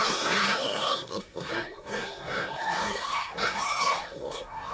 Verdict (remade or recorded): remade